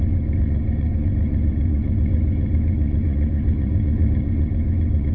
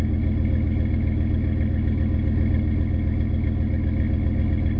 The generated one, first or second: first